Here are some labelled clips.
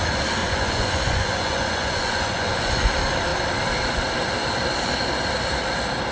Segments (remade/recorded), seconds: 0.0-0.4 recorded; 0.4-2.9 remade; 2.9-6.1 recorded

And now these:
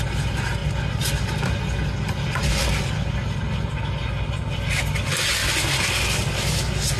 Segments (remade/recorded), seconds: 0.0-7.0 recorded

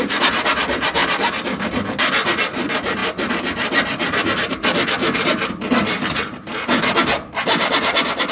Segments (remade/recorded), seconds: 0.0-8.3 recorded

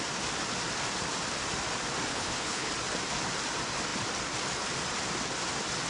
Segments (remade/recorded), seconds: 0.0-2.1 recorded; 2.1-2.7 remade; 2.7-5.9 recorded

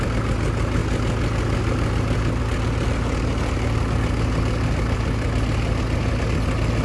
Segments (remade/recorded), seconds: 0.0-6.8 recorded

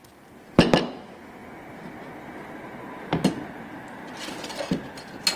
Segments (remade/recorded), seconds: 0.0-5.4 recorded

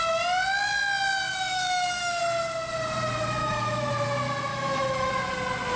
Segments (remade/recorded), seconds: 0.0-1.3 recorded; 1.3-2.2 remade; 2.2-3.4 recorded; 3.4-3.9 remade; 3.9-4.5 recorded; 4.5-5.1 remade; 5.1-5.8 recorded